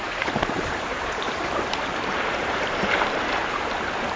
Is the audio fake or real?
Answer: fake